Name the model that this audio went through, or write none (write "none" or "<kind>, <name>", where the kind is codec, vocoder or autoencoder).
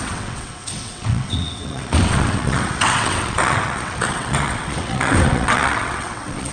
vocoder, WaveNeXt